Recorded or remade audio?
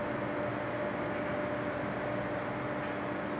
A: recorded